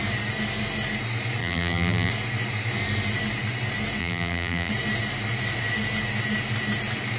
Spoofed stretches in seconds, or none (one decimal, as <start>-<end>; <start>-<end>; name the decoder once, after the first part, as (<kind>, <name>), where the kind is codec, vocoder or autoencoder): 1.4-2.1 (vocoder, BigVGAN v2); 4.0-4.7